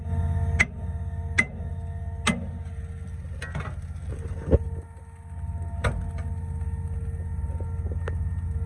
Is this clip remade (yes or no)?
no